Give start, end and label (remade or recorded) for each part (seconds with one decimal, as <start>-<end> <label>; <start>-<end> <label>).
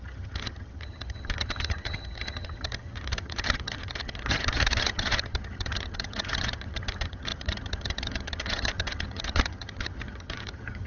0.0-10.9 remade